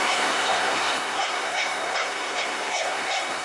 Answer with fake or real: fake